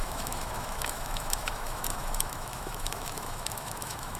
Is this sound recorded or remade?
remade